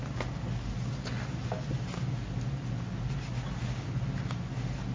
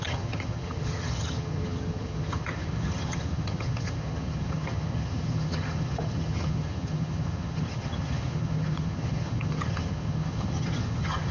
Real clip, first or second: first